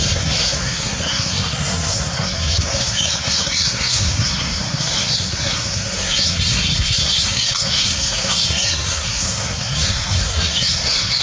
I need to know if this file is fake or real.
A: fake